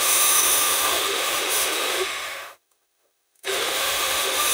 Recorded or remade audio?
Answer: remade